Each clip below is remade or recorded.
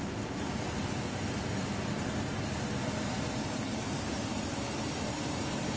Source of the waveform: recorded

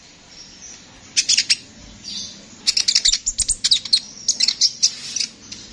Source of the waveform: recorded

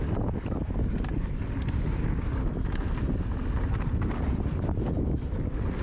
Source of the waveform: recorded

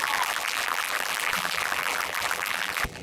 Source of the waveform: remade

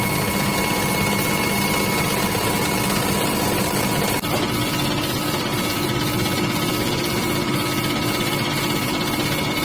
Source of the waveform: recorded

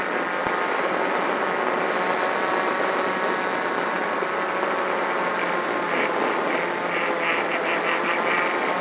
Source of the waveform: recorded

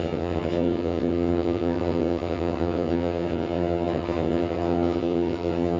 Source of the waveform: remade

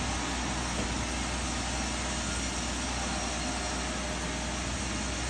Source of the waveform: recorded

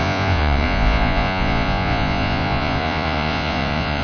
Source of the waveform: remade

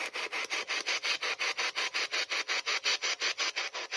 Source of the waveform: recorded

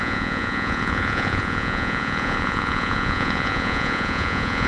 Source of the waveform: remade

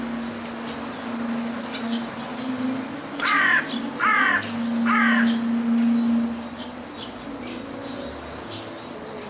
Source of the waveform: recorded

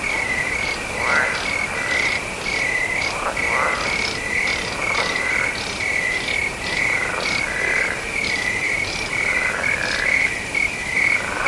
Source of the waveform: recorded